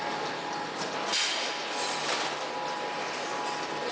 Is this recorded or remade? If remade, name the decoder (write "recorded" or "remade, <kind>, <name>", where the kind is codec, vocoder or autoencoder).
recorded